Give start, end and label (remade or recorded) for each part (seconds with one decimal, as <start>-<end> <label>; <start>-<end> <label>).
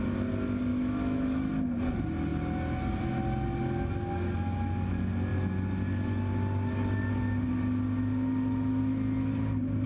0.0-0.7 recorded; 0.7-1.5 remade; 1.5-9.9 recorded